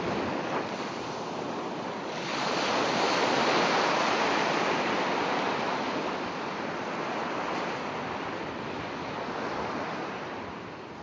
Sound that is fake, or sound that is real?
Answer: real